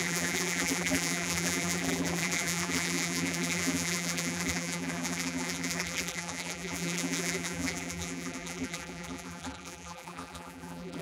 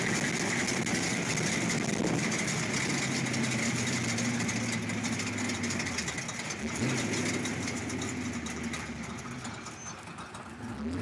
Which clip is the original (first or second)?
second